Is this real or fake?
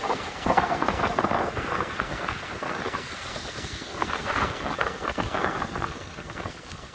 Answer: fake